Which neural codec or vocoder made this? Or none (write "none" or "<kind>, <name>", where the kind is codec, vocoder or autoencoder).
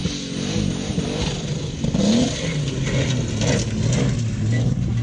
none